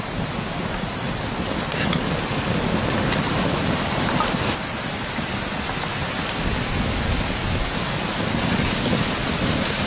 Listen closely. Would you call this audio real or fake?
real